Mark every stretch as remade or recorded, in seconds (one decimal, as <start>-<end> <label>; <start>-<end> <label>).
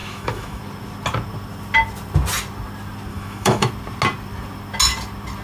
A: 0.0-0.6 remade; 0.6-3.1 recorded; 3.1-3.7 remade; 3.7-5.4 recorded